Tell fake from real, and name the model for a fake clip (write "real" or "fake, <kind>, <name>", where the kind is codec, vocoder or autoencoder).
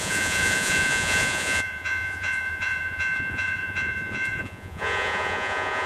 fake, vocoder, Vocos